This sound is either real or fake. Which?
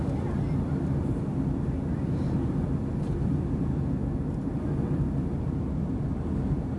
real